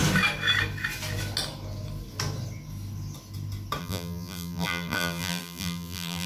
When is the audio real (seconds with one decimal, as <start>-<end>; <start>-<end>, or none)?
0.0-3.8